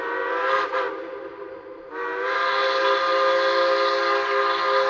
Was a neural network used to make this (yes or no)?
no